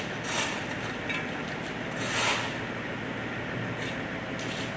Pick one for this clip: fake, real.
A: real